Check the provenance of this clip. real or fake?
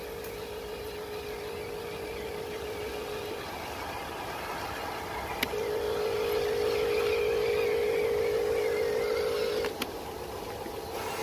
real